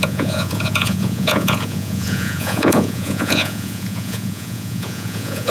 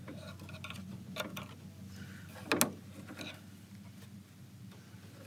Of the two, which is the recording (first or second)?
second